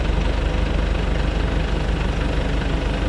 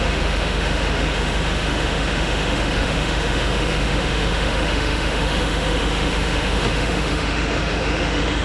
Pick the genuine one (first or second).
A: first